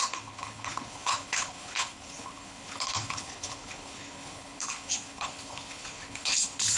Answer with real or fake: fake